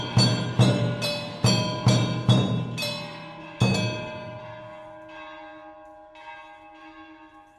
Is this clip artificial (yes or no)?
no